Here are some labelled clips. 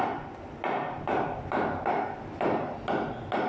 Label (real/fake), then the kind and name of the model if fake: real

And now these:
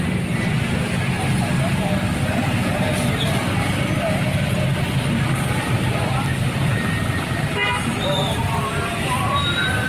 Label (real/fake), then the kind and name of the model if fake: real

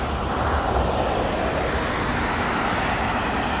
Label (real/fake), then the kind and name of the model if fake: real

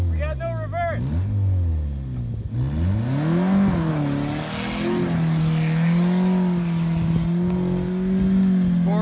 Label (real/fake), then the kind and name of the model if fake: real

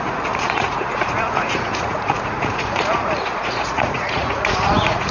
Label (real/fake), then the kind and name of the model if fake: fake, vocoder, Vocos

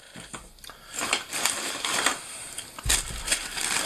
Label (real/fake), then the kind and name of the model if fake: real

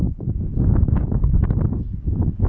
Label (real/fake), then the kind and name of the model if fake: real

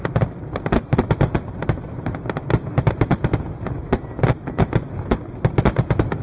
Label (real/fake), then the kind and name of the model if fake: real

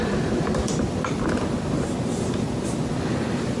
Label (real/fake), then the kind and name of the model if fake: real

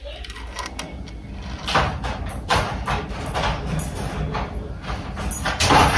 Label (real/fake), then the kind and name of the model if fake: real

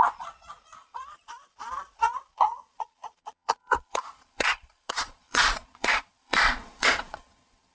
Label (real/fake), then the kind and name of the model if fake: fake, vocoder, Vocos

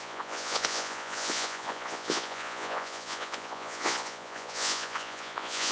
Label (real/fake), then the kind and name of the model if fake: fake, vocoder, Vocos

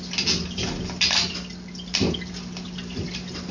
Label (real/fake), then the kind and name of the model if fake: real